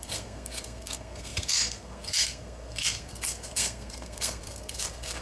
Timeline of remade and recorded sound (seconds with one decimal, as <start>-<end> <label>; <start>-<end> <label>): 0.0-5.2 remade